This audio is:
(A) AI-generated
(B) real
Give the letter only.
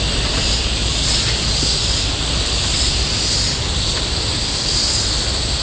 B